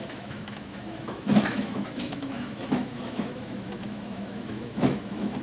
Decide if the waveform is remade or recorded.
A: remade